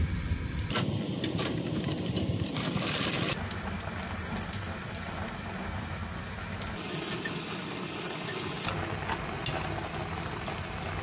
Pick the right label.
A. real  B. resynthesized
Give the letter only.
A